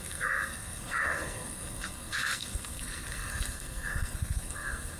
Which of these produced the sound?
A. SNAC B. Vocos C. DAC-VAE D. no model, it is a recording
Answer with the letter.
A